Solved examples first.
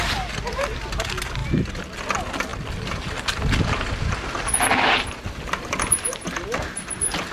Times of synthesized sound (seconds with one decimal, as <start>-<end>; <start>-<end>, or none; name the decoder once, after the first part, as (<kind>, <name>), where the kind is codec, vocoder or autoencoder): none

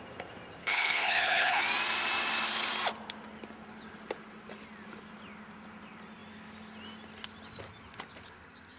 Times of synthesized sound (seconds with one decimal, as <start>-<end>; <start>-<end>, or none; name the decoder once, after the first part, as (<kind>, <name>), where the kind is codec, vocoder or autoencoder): 0.6-1.6 (codec, HILCodec)

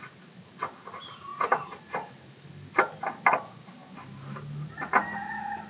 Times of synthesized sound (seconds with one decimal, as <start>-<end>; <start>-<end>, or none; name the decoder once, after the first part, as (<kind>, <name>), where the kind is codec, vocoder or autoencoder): none